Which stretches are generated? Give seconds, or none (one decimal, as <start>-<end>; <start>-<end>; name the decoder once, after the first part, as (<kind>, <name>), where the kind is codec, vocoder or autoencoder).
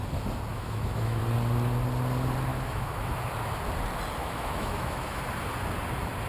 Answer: 0.5-1.2 (autoencoder, DAC-VAE); 2.5-3.2; 4.2-5.2